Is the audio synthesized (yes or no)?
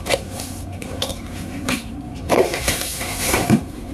yes